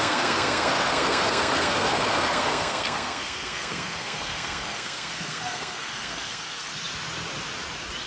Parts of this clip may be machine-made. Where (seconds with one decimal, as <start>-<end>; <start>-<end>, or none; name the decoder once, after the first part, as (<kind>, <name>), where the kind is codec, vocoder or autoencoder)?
0.0-6.7 (codec, SNAC)